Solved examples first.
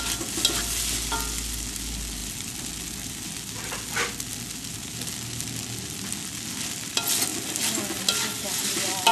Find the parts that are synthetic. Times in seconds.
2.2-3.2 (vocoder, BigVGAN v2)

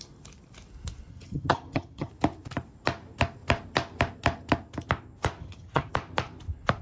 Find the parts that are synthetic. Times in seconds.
1.1-2.1 (vocoder, HiFi-GAN); 5.4-5.9

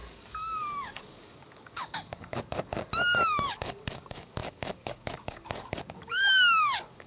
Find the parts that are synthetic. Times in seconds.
0.0-7.1 (codec, DAC)

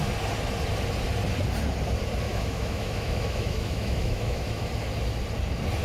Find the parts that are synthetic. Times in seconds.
2.3-4.7 (autoencoder, DAC-VAE)